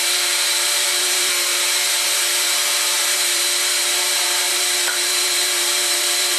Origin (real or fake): fake